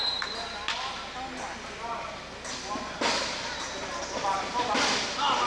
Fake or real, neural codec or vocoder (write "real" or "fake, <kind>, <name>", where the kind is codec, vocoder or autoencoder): real